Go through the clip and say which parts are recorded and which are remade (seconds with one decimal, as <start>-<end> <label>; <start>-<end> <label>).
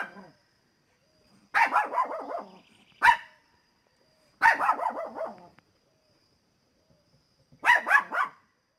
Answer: 0.0-0.4 remade; 0.4-2.8 recorded; 2.8-8.8 remade